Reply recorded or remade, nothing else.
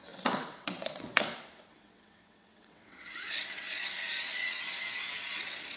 remade